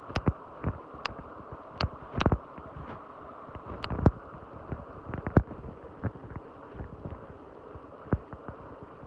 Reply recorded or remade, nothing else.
recorded